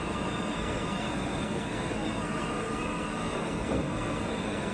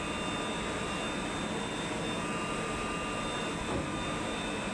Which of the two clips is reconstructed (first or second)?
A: first